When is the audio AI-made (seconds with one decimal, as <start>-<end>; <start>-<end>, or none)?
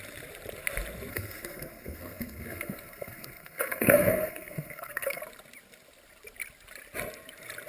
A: 1.1-5.2